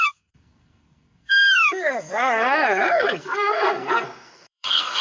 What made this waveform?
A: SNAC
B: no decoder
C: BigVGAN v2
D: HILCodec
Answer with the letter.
A